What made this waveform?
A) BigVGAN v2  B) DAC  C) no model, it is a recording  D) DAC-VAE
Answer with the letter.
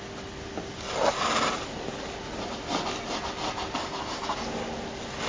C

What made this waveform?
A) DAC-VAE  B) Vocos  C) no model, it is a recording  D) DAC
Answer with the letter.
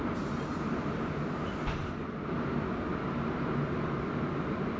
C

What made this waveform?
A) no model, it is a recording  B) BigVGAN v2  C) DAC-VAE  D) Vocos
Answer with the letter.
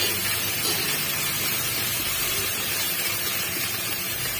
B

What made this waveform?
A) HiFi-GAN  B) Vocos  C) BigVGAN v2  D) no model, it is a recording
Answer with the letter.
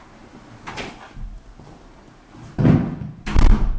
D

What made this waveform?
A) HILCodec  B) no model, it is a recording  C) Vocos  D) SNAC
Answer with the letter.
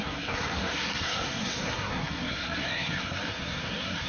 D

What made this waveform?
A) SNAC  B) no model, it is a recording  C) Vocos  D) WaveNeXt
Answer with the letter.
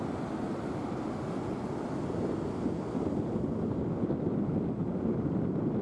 B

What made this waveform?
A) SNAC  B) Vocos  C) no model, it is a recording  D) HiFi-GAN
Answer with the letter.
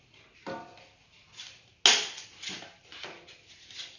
C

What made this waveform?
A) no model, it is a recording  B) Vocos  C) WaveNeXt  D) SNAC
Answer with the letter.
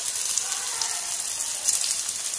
A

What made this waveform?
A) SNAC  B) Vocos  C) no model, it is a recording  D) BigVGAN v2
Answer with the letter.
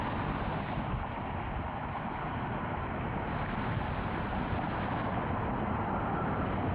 C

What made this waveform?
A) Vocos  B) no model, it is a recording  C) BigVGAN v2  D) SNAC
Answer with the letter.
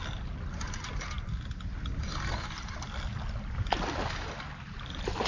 B